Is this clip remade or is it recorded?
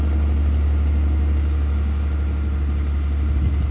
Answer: recorded